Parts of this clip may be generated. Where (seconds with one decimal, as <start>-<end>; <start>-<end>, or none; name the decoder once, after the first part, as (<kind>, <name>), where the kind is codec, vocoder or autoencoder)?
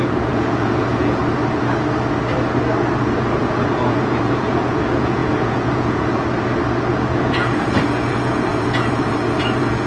0.0-1.2 (vocoder, Vocos); 3.4-6.2; 6.9-9.9